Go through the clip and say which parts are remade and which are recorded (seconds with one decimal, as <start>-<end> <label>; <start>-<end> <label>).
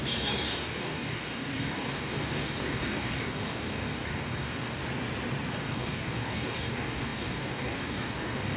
0.0-4.8 remade; 4.8-5.5 recorded; 5.5-8.6 remade